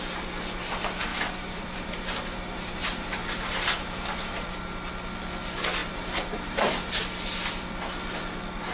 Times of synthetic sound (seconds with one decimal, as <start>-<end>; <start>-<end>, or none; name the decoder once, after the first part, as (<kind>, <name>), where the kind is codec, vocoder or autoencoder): 1.1-4.6 (vocoder, BigVGAN v2); 5.8-7.0